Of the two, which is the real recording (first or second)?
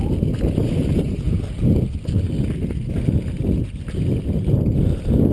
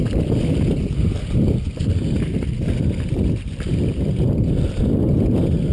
first